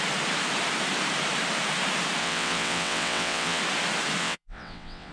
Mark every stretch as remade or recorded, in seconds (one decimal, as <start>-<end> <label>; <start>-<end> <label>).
0.0-2.2 recorded; 2.2-3.6 remade; 3.6-4.2 recorded; 4.2-5.1 remade